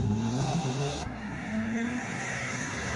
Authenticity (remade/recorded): remade